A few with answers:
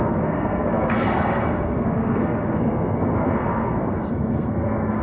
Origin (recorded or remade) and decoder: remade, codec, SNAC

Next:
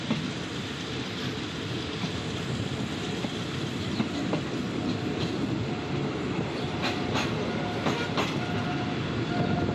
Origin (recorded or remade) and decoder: recorded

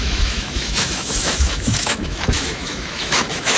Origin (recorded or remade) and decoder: remade, autoencoder, DAC-VAE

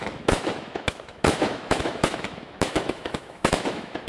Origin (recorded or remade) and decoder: remade, autoencoder, DAC-VAE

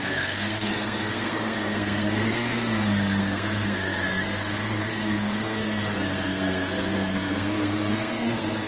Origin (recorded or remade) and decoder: remade, codec, SNAC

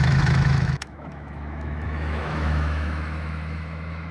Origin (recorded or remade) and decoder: remade, autoencoder, DAC-VAE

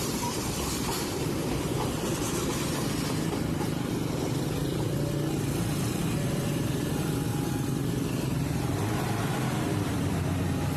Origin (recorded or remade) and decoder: remade, vocoder, BigVGAN v2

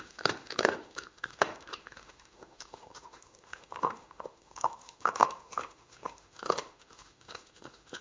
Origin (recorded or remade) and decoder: remade, autoencoder, DAC-VAE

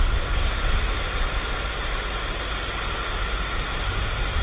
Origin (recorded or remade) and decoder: recorded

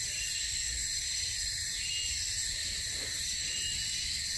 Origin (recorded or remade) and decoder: recorded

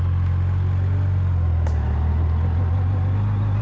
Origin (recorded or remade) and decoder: recorded